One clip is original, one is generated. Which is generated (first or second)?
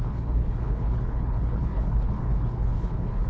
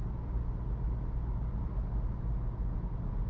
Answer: first